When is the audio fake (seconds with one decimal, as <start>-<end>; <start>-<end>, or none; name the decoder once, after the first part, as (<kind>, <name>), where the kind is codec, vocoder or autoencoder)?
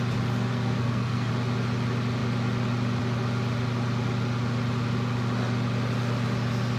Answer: 0.5-1.3 (codec, SNAC)